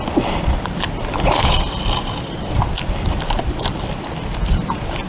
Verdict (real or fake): real